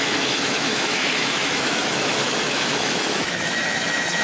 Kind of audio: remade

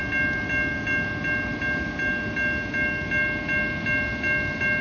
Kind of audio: recorded